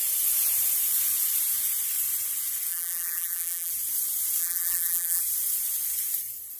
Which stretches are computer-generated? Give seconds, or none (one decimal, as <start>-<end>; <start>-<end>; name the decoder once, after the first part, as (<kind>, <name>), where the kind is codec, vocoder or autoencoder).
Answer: 2.7-3.7 (vocoder, BigVGAN v2); 4.4-5.2